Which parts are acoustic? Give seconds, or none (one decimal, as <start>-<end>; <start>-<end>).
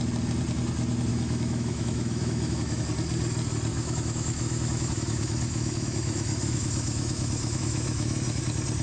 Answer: 0.0-1.1; 2.8-3.7; 8.4-8.8